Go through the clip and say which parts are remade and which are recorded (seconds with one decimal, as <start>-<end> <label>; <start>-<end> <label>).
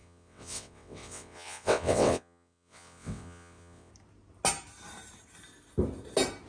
0.0-3.9 remade; 3.9-6.5 recorded